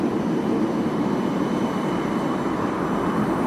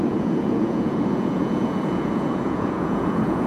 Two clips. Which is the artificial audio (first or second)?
second